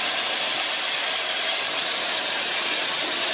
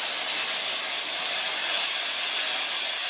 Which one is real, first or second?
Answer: second